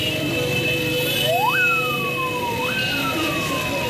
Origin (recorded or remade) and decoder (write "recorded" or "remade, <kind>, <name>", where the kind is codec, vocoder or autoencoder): recorded